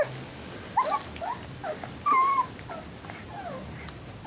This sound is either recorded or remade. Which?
recorded